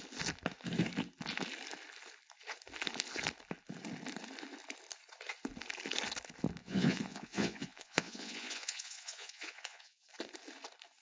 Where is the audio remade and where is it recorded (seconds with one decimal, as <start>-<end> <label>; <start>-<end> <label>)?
0.0-6.6 recorded; 6.6-10.1 remade; 10.1-11.0 recorded